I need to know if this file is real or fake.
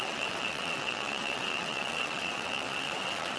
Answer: fake